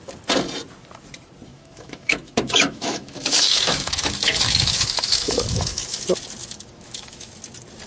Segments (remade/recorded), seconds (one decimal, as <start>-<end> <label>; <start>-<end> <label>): 0.0-1.5 recorded; 1.5-6.0 remade; 6.0-6.4 recorded; 6.4-7.3 remade; 7.3-7.9 recorded